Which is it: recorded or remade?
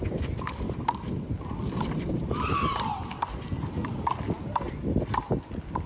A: recorded